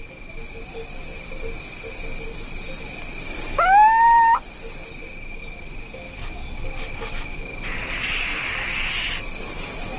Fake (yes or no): no